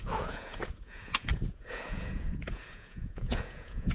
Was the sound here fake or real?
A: fake